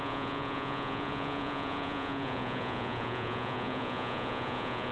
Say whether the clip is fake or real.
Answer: fake